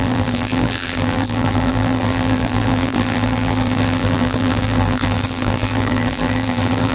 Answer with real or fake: fake